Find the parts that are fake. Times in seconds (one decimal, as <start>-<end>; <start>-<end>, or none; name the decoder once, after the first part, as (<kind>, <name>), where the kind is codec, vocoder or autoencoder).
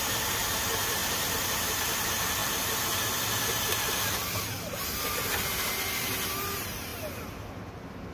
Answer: 0.0-1.0 (vocoder, BigVGAN v2); 1.5-6.9